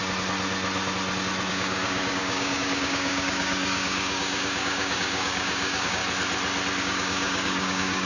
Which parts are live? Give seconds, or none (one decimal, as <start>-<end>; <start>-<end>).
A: 0.0-1.5; 6.0-6.8